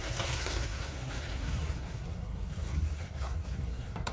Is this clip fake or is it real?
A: fake